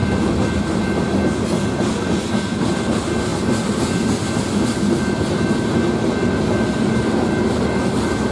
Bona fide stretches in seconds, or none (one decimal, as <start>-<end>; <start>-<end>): 0.0-8.3